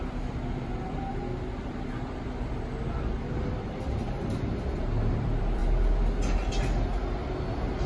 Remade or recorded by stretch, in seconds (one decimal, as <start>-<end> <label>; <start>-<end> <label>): 0.0-1.1 remade; 1.1-1.6 recorded; 1.6-4.0 remade; 4.0-4.8 recorded; 4.8-5.6 remade; 5.6-7.9 recorded